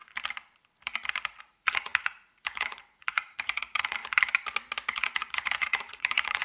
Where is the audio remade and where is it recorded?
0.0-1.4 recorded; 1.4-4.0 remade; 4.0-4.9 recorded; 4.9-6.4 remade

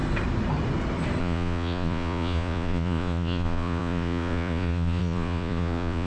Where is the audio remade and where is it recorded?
0.0-1.2 recorded; 1.2-6.1 remade